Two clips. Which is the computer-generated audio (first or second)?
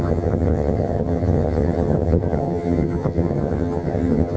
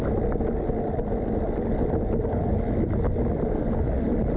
first